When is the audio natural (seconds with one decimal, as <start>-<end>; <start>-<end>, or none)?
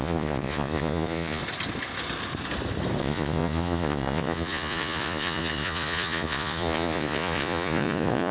1.4-3.0